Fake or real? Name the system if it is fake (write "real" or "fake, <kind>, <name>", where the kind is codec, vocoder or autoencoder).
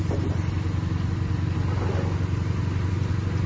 real